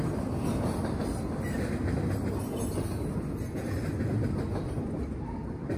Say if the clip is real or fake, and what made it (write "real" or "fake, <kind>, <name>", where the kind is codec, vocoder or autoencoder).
real